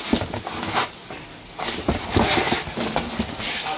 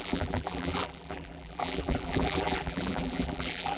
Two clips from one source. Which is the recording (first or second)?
first